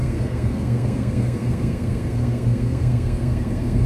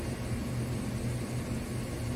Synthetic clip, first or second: first